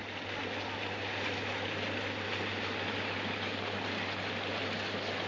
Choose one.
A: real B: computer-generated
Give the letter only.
A